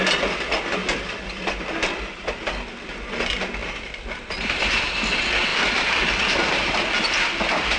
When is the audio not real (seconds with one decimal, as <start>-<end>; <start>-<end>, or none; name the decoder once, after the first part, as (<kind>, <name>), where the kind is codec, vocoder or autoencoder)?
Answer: 0.8-2.3 (vocoder, BigVGAN v2); 3.6-4.9; 5.5-7.8